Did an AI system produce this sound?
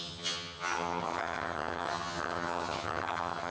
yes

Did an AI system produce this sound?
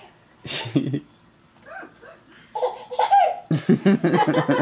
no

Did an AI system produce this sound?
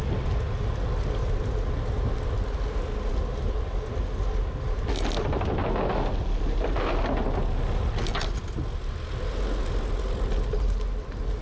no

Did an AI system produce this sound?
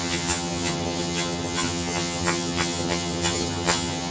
yes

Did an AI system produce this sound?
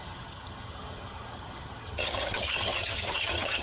yes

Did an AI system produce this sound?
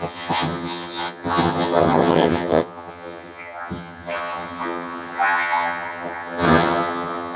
yes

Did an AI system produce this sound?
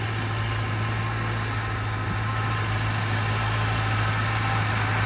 no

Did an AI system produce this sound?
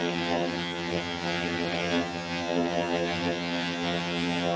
yes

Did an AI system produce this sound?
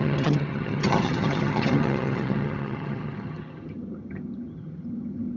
yes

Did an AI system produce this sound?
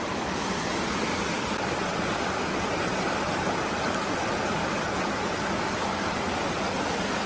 no